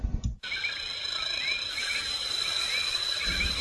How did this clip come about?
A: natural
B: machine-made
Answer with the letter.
A